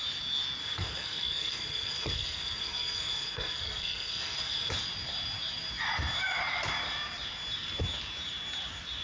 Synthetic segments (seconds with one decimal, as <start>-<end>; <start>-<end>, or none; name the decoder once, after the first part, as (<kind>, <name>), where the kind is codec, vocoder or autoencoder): 0.6-4.7 (codec, SNAC)